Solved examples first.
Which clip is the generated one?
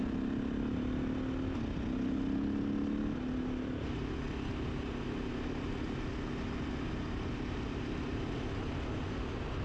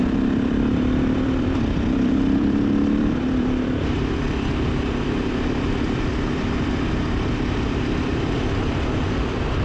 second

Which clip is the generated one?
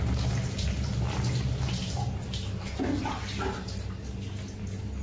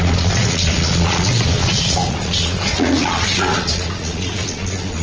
second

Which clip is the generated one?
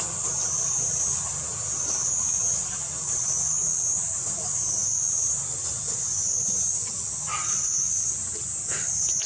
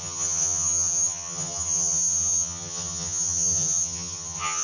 second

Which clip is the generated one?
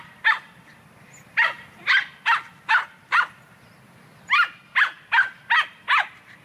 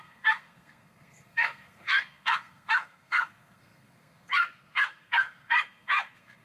second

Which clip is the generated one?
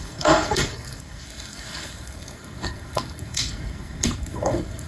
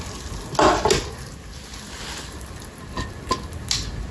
first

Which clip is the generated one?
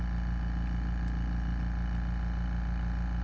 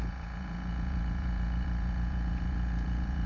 second